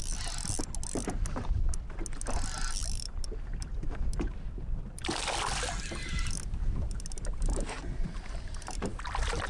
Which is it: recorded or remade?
recorded